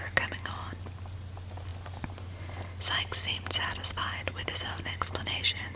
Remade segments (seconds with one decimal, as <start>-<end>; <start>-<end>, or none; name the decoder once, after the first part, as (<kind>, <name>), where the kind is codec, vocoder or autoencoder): none